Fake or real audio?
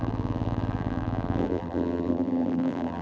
fake